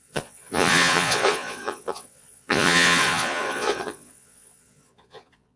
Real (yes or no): no